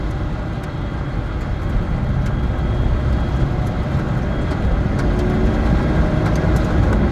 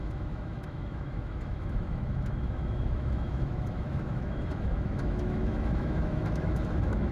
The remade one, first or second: second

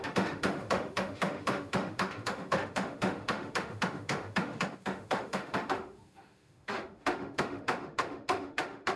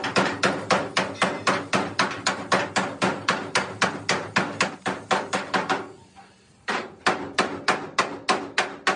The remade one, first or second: first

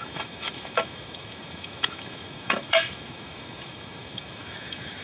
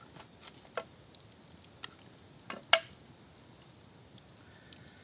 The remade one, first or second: first